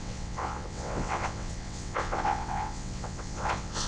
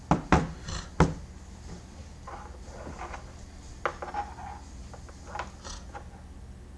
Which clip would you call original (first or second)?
second